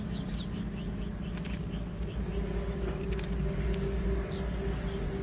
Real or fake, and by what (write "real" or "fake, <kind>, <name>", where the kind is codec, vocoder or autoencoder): real